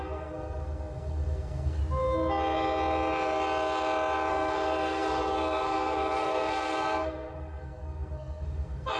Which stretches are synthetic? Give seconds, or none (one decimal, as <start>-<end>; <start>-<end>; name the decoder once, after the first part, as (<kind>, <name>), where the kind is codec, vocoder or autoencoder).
0.0-1.8 (codec, SNAC); 4.3-9.0